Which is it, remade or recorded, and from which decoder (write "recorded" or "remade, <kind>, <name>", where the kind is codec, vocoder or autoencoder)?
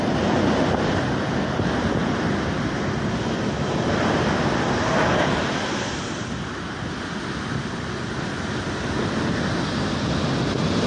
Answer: recorded